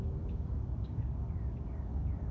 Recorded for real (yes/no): no